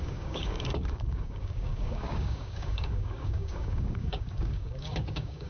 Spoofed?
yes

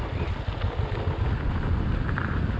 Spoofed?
no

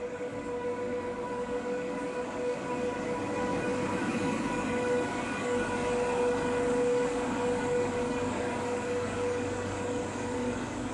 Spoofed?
yes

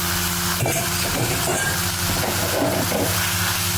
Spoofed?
no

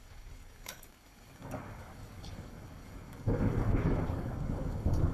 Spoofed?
yes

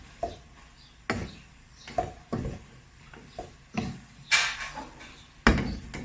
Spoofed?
no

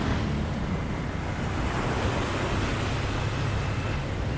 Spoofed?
no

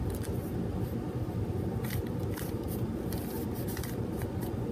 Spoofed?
no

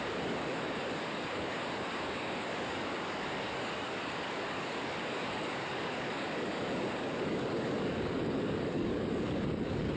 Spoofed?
yes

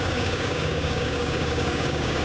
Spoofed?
yes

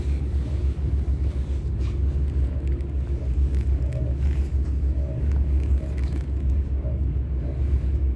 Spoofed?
yes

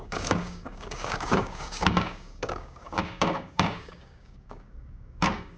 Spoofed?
yes